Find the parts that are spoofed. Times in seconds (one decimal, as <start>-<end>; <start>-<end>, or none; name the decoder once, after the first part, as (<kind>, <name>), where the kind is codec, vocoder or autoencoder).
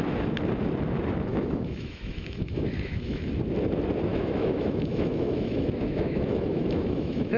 1.3-3.3 (autoencoder, DAC-VAE); 4.1-7.4